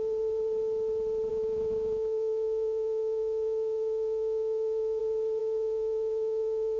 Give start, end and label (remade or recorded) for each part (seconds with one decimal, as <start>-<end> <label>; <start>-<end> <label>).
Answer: 0.0-1.3 recorded; 1.3-5.0 remade; 5.0-5.4 recorded; 5.4-6.8 remade